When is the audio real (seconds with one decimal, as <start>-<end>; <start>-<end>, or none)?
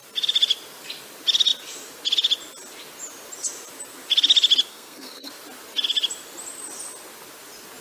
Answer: 0.0-4.7; 5.3-7.8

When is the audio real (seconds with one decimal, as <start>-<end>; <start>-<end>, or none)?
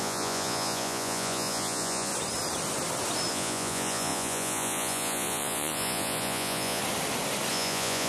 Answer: 2.1-3.3; 6.8-7.5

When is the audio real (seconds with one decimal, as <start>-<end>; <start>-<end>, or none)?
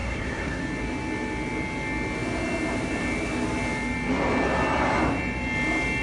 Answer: 0.6-6.0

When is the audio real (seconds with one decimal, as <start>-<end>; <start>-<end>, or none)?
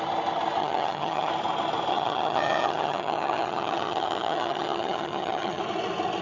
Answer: 0.0-0.6; 1.3-1.9; 5.6-6.2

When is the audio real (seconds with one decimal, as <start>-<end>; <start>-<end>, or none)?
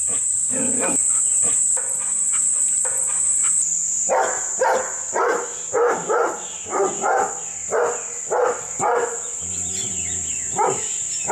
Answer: 0.0-11.3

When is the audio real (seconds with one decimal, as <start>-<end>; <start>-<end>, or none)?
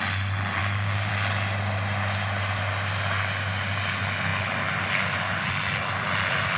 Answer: 0.0-0.6; 1.1-6.6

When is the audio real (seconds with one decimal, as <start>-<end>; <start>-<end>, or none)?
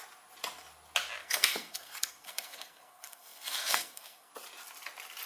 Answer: 0.0-1.2; 4.3-5.3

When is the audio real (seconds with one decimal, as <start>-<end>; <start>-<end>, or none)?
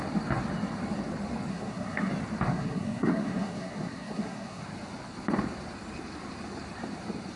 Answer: 0.0-1.5; 2.1-2.5; 4.6-7.4